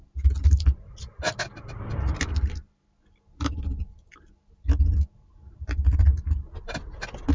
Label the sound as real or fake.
real